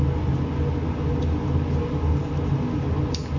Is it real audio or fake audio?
real